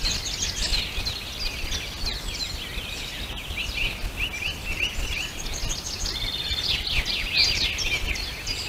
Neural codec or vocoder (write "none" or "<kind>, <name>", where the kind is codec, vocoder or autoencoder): none